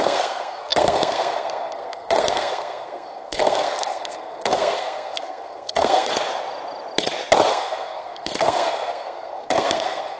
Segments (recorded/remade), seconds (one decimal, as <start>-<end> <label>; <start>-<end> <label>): 0.0-6.1 remade; 6.1-7.5 recorded; 7.5-10.2 remade